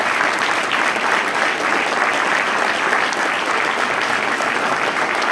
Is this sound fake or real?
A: real